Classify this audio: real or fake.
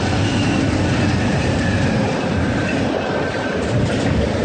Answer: real